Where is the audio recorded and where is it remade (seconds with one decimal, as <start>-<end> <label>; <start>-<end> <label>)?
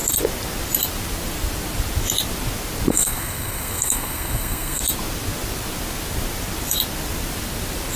0.0-2.9 recorded; 2.9-4.8 remade; 4.8-8.0 recorded